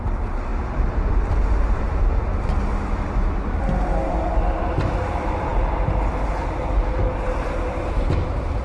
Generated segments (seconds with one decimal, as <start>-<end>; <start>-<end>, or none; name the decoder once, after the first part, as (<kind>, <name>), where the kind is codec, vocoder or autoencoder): none